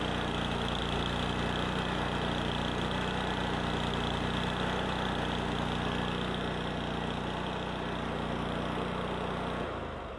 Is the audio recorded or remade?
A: recorded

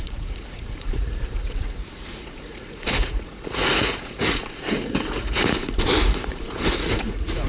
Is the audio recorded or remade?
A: remade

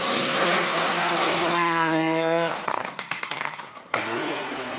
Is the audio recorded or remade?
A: remade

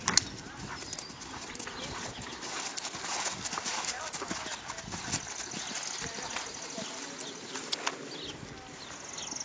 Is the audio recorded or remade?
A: recorded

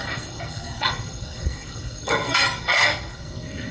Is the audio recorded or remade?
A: remade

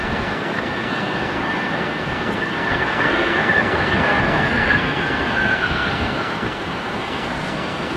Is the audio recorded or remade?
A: remade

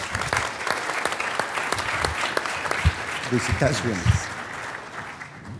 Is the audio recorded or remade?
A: recorded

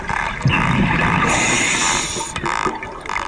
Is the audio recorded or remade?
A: recorded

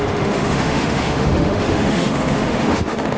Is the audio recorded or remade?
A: remade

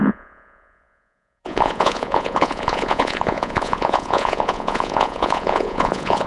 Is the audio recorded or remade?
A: remade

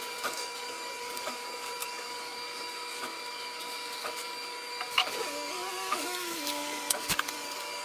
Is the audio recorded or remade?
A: remade